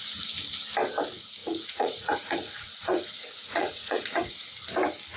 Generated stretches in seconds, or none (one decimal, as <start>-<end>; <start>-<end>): 1.4-4.5